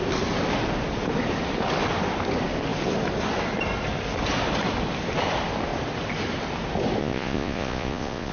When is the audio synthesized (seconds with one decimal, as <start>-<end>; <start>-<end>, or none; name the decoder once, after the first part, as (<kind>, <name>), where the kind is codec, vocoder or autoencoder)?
7.0-8.3 (vocoder, Vocos)